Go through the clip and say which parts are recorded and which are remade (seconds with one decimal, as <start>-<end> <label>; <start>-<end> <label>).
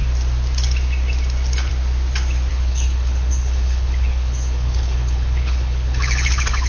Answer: 0.0-2.5 recorded; 2.5-6.7 remade